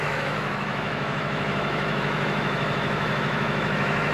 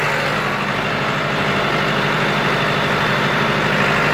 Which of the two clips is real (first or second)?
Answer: second